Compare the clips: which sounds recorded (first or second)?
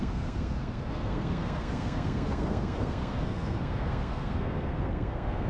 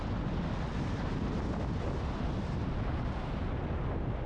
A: second